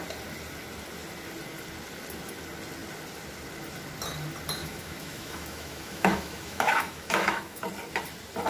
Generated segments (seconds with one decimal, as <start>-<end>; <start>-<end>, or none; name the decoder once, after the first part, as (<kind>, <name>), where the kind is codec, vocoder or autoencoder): 4.6-7.6 (autoencoder, DAC-VAE)